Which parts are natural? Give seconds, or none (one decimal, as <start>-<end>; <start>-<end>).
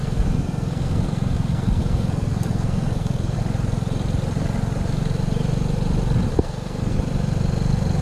3.4-6.3; 7.0-8.0